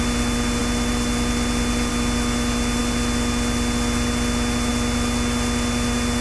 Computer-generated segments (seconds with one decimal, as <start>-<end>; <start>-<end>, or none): none